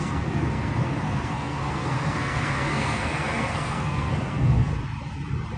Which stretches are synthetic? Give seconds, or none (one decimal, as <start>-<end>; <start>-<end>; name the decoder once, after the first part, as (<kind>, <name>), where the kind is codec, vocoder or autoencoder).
0.0-4.7 (codec, SNAC)